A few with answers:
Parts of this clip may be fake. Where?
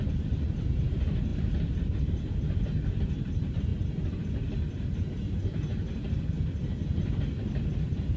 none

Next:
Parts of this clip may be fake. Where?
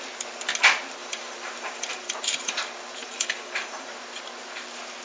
1.0-2.5 (vocoder, BigVGAN v2); 3.0-3.9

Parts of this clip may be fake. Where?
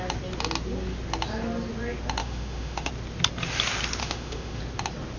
2.2-2.9 (autoencoder, DAC-VAE); 4.0-4.6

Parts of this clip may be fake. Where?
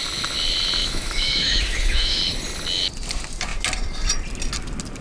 0.8-2.2 (autoencoder, DAC-VAE)